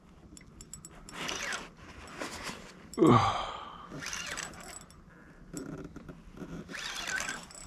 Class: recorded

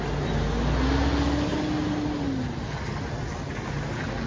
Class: recorded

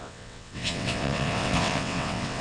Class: remade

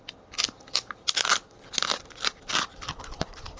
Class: recorded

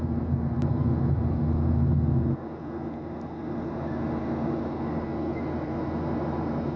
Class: recorded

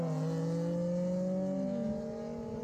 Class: recorded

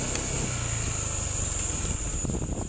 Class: recorded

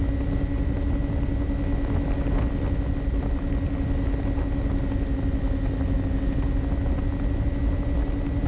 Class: recorded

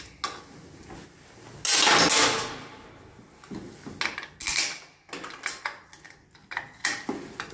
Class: recorded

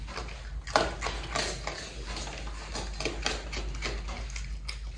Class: recorded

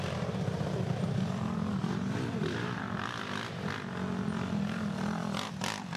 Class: recorded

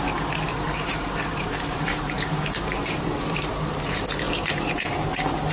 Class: remade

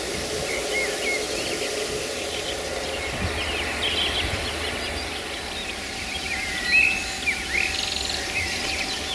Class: recorded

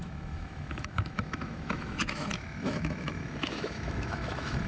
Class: remade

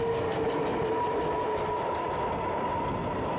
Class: recorded